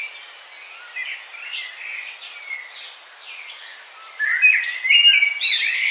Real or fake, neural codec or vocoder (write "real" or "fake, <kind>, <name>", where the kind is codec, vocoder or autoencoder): real